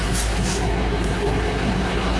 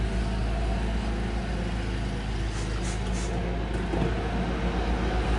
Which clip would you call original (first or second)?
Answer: second